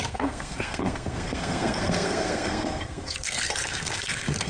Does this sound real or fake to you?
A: fake